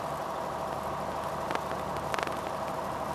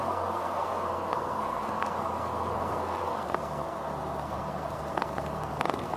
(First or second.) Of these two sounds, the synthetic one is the second